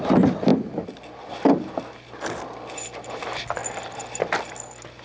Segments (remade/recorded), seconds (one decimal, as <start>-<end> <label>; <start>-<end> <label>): 0.0-0.5 recorded; 0.5-3.1 remade; 3.1-3.6 recorded; 3.6-4.4 remade; 4.4-5.0 recorded